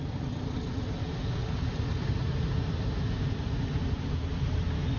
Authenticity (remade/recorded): recorded